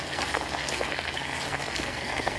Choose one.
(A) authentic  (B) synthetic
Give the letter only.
B